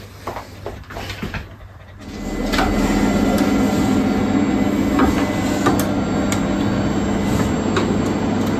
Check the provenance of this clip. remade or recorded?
recorded